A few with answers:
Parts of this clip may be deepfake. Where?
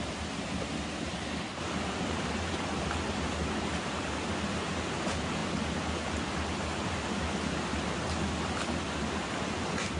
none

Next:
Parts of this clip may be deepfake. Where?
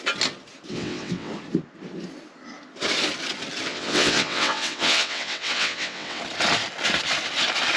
0.7-1.3; 3.7-6.2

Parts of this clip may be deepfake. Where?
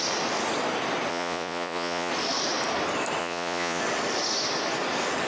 1.1-2.1; 3.2-3.8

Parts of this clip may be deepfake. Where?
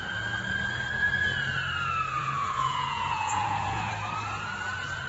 2.2-3.9